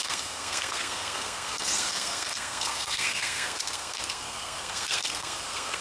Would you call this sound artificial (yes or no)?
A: yes